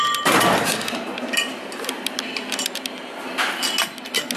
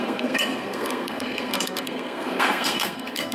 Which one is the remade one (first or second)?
second